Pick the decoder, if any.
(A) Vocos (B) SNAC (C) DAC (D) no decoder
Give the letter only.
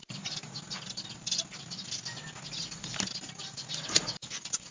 D